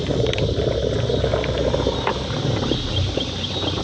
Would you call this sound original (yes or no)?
yes